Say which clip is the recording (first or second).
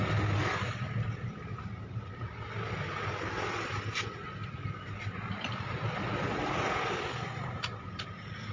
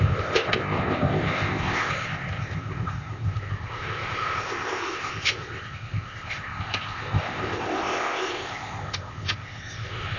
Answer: first